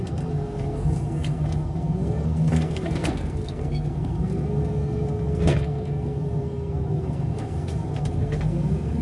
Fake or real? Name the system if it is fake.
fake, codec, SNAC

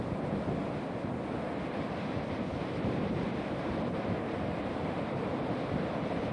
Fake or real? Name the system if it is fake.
fake, vocoder, BigVGAN v2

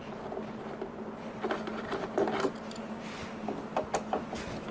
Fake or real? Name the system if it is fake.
real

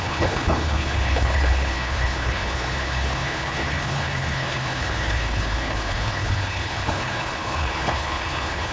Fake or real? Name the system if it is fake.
fake, codec, HILCodec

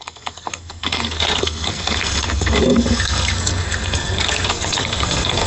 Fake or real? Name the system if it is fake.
fake, codec, SNAC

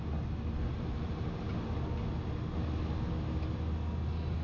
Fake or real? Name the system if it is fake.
real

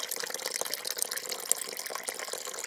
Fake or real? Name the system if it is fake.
real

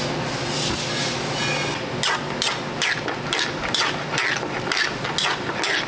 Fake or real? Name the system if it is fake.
real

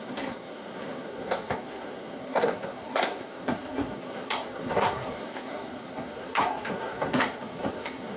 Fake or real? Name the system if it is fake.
fake, codec, SNAC